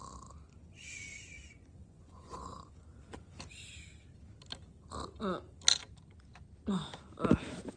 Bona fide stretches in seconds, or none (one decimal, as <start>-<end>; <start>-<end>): 0.0-0.6; 3.3-7.8